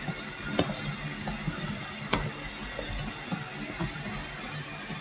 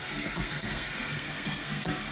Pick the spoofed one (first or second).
second